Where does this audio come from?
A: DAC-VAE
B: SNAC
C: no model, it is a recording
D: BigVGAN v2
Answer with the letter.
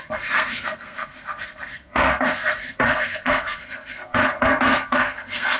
B